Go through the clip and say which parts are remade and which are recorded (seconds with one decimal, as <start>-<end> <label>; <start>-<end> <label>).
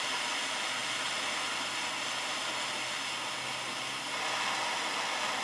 0.0-5.4 recorded